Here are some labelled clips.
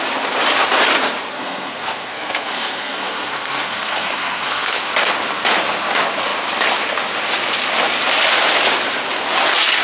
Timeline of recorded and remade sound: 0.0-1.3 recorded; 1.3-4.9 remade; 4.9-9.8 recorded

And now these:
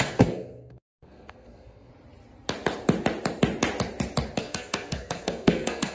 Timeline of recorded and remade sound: 0.0-1.9 remade; 1.9-4.4 recorded; 4.4-5.9 remade